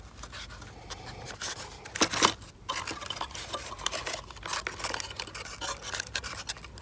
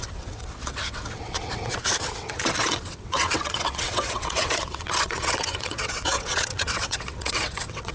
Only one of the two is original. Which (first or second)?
first